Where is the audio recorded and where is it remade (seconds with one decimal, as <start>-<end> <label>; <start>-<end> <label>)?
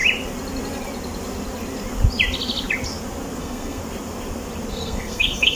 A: 0.0-3.4 recorded; 3.4-3.8 remade; 3.8-4.7 recorded; 4.7-5.6 remade